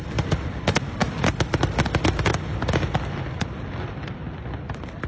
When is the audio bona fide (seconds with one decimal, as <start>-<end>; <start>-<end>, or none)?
0.0-5.1